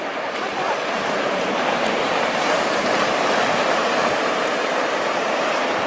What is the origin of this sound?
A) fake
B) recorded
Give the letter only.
A